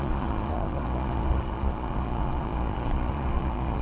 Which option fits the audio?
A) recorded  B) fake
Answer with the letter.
B